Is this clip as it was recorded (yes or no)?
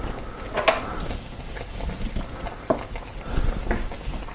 yes